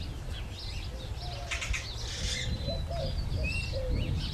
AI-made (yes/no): no